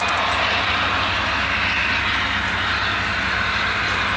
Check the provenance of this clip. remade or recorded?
recorded